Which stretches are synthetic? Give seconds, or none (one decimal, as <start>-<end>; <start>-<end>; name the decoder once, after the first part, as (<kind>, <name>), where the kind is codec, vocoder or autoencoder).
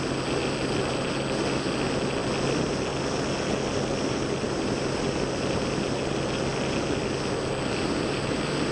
none